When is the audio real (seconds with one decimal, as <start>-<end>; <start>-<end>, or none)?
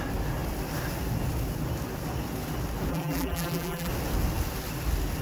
0.0-2.9; 3.9-5.2